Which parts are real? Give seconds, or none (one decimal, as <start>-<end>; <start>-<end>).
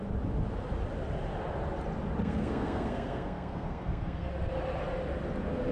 0.0-2.2; 4.3-5.7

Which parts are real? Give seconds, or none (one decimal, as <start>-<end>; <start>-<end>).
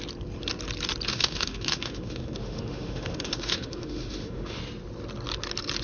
0.0-1.1; 4.6-5.8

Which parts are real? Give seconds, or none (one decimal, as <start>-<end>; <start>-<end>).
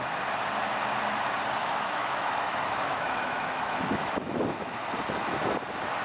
0.0-1.6; 5.0-6.0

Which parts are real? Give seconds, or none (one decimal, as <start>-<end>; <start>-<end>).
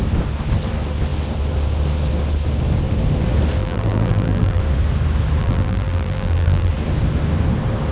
0.0-3.6; 4.6-5.4; 6.7-7.9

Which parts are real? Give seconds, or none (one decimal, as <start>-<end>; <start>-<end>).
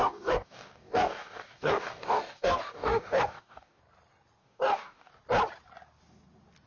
3.8-4.4; 5.1-6.7